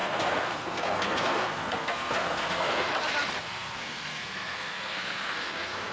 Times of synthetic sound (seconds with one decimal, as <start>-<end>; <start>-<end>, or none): 0.0-2.9; 3.4-5.9